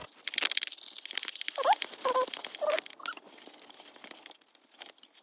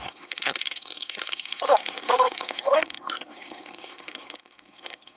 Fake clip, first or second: second